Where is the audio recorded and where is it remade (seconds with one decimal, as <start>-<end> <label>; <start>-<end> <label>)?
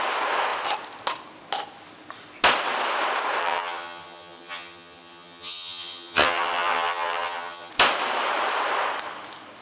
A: 0.0-3.4 recorded; 3.4-7.7 remade; 7.7-9.6 recorded